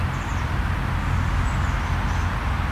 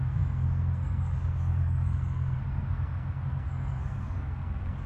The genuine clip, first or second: first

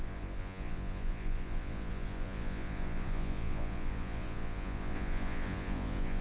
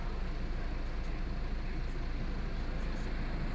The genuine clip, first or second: second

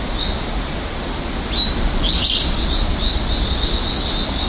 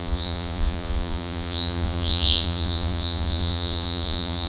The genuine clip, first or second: first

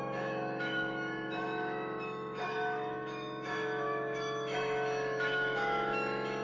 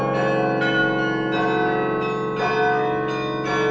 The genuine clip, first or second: second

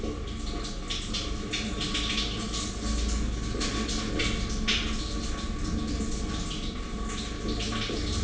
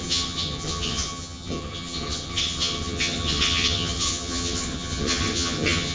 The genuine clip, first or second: first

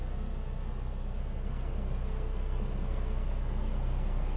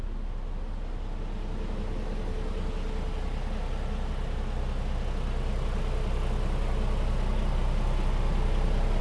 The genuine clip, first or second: second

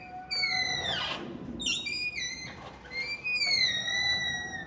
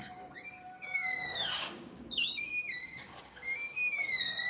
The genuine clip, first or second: first